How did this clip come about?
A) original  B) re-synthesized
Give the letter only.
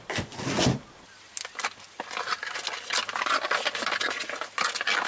A